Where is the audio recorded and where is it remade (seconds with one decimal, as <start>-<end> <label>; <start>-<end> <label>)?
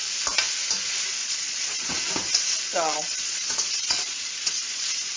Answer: 0.0-1.2 recorded; 1.2-1.9 remade; 1.9-2.7 recorded; 2.7-5.2 remade